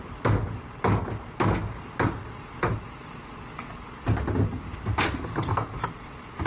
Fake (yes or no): no